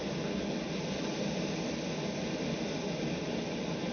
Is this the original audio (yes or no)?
yes